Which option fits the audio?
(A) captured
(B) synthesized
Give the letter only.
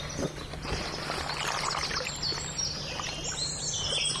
A